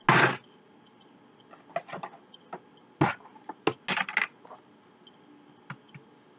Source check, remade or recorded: recorded